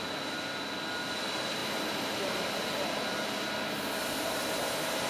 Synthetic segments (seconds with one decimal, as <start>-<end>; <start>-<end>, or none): none